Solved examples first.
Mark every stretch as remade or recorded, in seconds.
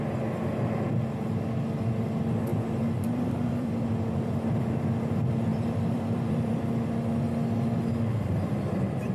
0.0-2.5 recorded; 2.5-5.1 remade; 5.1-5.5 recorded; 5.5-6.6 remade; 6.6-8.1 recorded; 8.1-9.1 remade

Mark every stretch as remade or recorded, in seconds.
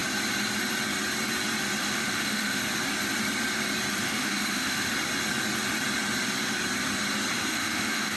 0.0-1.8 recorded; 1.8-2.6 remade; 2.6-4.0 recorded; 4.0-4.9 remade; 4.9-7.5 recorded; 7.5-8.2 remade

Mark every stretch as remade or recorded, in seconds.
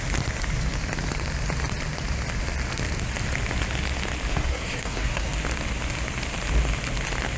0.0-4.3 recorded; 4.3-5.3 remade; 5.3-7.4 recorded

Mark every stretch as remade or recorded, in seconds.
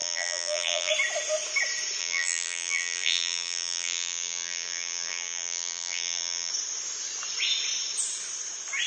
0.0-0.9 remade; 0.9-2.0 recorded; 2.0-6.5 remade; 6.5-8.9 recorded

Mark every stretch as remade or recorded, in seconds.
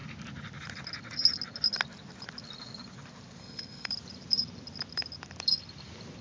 0.0-3.4 recorded; 3.4-3.9 remade; 3.9-6.2 recorded